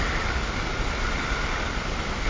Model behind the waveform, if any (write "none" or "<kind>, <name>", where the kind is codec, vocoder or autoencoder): none